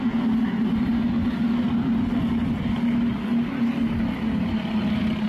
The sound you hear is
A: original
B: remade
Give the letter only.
A